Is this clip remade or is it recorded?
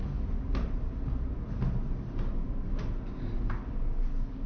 recorded